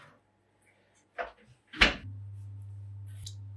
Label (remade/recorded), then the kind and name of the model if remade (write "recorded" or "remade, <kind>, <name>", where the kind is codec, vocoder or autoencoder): recorded